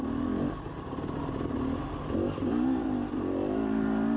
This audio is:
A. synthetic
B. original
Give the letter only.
B